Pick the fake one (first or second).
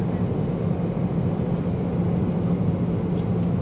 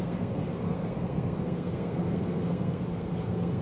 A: second